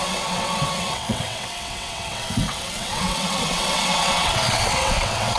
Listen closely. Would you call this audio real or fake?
fake